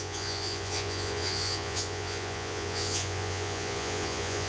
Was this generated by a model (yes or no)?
yes